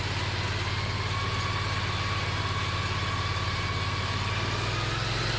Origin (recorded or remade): recorded